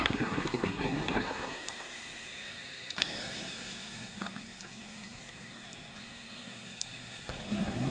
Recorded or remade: remade